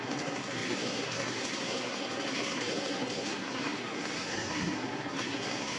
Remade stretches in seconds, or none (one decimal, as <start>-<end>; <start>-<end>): 0.0-5.8